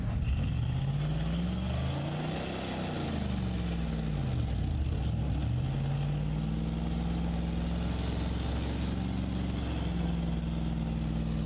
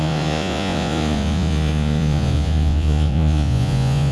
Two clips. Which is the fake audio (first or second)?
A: second